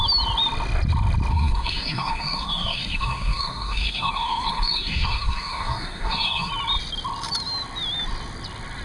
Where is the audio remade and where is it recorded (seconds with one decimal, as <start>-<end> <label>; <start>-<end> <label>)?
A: 0.0-1.3 recorded; 1.3-6.5 remade; 6.5-8.8 recorded